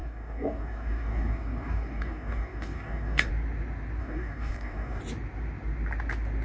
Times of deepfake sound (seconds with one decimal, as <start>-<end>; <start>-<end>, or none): 0.0-3.3; 4.0-5.0